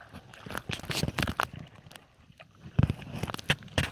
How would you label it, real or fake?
real